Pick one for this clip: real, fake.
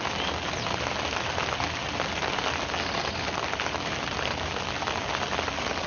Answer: real